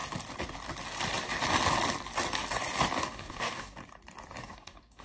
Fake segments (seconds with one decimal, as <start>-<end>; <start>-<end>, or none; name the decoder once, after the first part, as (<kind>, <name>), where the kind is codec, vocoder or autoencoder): 3.0-3.8 (codec, DAC); 4.4-5.0